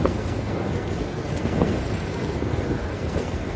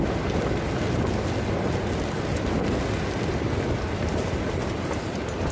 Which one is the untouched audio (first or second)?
second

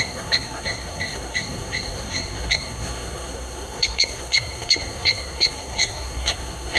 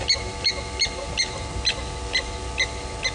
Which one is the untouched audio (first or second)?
second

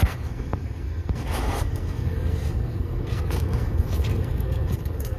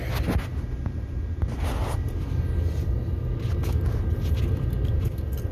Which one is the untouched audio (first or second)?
second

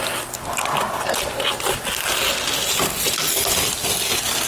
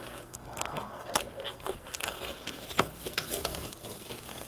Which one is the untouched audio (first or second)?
first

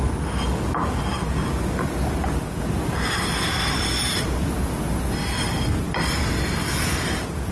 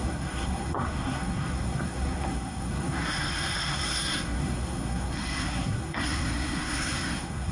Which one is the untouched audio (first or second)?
first